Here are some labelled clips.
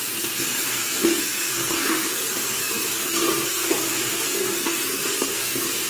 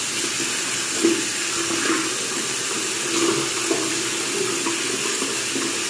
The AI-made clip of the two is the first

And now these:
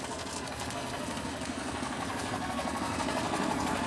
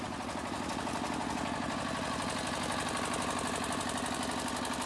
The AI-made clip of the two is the first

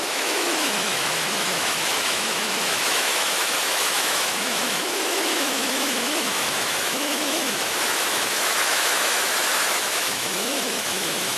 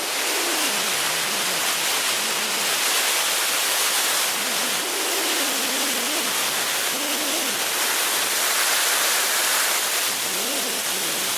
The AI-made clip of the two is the first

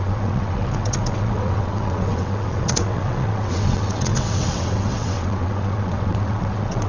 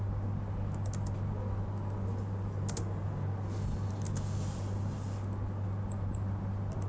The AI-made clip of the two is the first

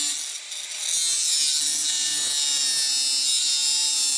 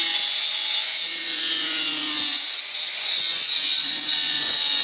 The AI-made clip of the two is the second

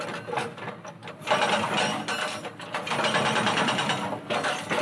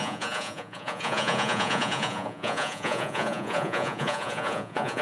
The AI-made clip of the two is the second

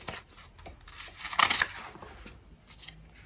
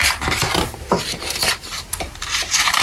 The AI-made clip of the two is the second